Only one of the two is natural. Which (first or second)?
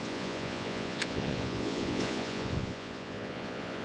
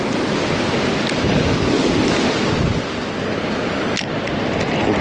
second